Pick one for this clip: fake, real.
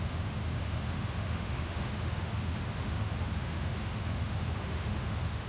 fake